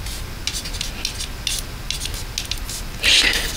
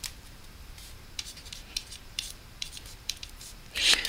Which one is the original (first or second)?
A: first